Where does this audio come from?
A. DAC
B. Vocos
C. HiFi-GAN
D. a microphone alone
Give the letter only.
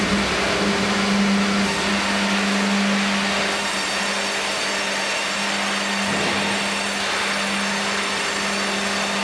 D